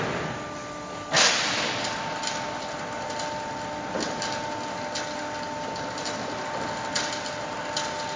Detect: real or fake real